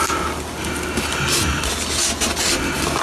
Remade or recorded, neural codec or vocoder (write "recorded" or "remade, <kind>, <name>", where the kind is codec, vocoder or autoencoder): recorded